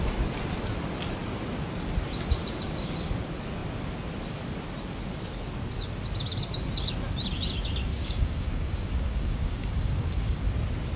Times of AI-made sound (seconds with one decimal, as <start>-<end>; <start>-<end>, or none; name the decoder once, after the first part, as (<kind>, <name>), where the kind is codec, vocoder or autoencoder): 7.9-10.4 (codec, DAC)